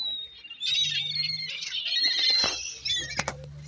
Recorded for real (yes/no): yes